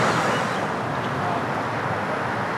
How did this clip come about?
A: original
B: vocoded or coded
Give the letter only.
A